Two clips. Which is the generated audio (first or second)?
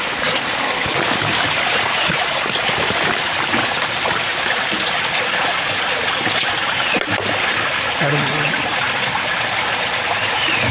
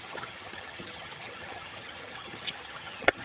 second